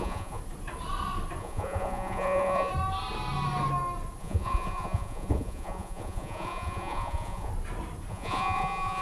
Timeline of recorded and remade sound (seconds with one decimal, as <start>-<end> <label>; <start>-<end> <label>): 0.0-0.4 remade; 0.4-1.4 recorded; 1.4-2.7 remade; 2.7-4.2 recorded; 4.2-7.5 remade; 7.5-8.1 recorded; 8.1-9.0 remade